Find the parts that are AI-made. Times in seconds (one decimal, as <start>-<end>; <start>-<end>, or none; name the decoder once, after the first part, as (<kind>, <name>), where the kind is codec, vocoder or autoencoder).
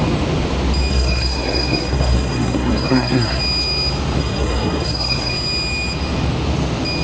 0.9-3.4 (codec, SNAC); 4.2-5.3